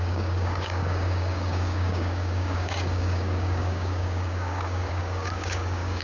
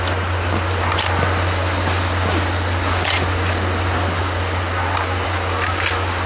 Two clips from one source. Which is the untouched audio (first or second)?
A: second